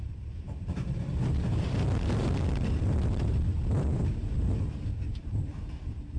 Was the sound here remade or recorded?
remade